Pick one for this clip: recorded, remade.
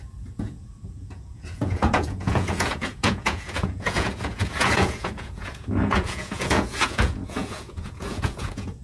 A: remade